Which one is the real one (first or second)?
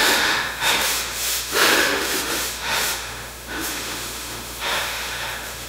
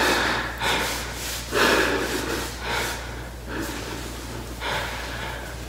second